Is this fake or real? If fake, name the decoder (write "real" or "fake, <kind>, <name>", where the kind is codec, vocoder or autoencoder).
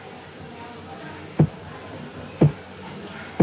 real